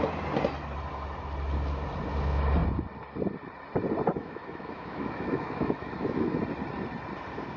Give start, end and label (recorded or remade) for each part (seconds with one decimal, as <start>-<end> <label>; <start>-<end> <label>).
0.0-4.1 recorded; 4.1-6.4 remade; 6.4-7.6 recorded